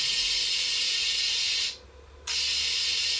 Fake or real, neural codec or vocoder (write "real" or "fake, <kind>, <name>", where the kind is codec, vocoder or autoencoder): real